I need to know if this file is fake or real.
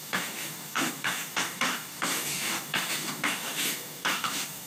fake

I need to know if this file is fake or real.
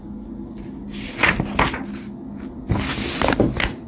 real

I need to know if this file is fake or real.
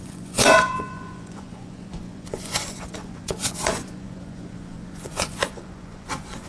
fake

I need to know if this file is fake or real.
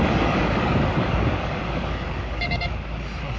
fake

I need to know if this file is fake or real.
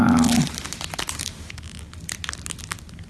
real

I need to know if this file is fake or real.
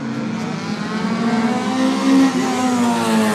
real